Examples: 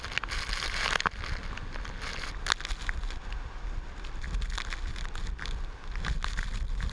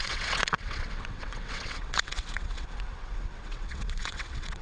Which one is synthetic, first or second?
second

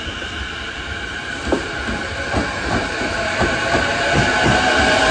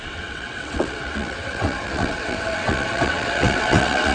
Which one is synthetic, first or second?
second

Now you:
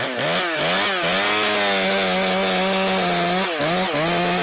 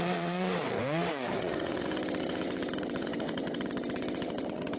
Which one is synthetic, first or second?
second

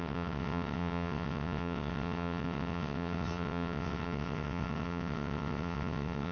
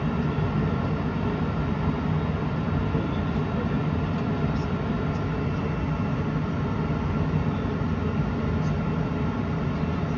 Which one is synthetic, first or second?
first